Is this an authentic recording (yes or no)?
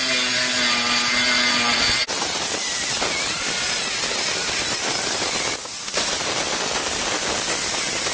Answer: yes